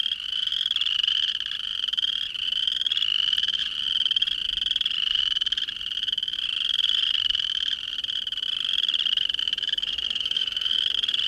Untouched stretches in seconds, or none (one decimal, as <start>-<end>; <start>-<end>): 0.0-9.4; 10.7-11.3